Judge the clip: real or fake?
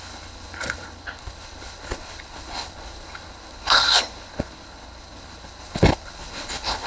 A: fake